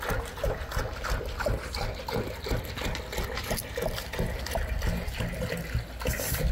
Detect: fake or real real